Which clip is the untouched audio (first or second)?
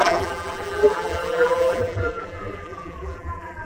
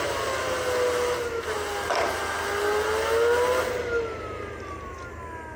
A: second